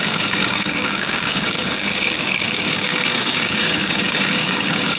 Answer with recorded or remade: remade